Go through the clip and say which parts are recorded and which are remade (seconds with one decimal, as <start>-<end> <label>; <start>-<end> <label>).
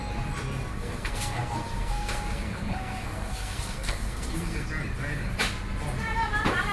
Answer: 0.0-0.7 recorded; 0.7-4.7 remade; 4.7-6.7 recorded